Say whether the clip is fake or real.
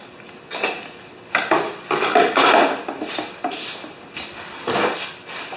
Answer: real